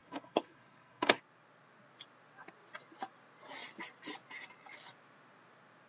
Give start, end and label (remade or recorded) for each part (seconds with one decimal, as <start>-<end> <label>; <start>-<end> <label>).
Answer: 0.0-1.2 remade; 1.2-5.9 recorded